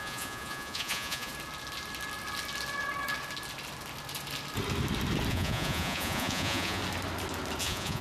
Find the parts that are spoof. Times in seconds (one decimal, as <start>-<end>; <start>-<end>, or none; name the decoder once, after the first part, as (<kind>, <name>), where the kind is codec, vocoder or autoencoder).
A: 0.0-1.3 (vocoder, Vocos); 5.3-6.8; 7.6-8.0